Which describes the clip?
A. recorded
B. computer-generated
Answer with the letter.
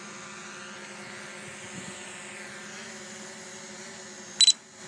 A